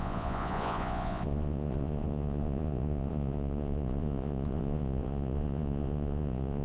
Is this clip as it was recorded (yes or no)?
no